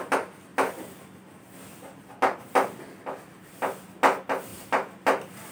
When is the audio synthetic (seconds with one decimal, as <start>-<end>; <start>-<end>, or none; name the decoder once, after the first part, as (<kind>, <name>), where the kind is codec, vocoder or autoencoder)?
4.5-5.5 (vocoder, BigVGAN v2)

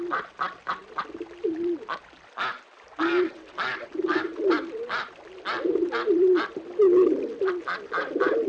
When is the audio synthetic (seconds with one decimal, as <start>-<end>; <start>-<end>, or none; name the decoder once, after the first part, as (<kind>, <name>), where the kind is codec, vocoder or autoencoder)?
2.5-5.1 (vocoder, BigVGAN v2)

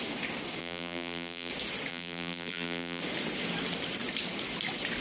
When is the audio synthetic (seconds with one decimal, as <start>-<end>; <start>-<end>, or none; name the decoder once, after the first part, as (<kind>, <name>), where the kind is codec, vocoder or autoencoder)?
0.6-1.5 (vocoder, BigVGAN v2); 1.9-3.0

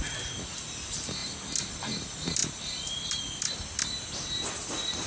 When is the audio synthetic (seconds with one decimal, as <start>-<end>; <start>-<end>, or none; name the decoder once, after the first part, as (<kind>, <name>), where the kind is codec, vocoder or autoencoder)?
2.4-3.5 (vocoder, BigVGAN v2)

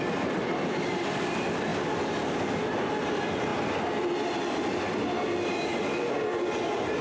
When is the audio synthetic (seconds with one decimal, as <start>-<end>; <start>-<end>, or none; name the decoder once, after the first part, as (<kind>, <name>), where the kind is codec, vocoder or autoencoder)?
none